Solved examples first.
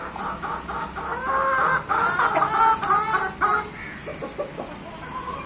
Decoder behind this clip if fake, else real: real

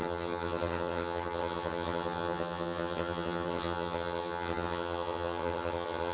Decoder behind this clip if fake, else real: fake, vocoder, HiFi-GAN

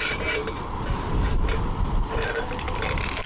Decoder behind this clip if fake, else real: real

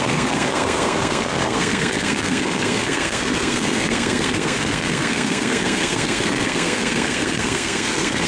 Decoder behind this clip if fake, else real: fake, codec, SNAC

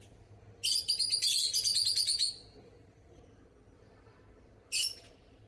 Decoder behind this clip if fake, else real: real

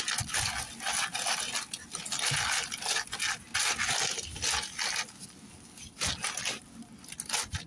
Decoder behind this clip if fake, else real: real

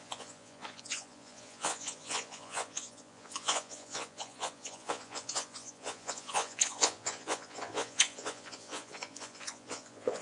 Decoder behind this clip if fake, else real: fake, vocoder, Vocos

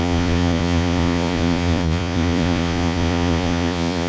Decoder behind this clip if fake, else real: fake, vocoder, Vocos